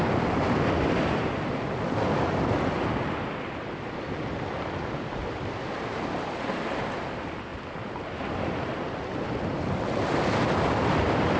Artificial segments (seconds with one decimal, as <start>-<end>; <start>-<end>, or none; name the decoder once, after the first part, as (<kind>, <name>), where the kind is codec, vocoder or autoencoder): none